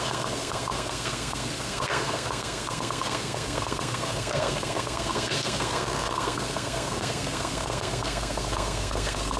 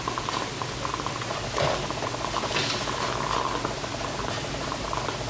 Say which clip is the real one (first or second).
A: second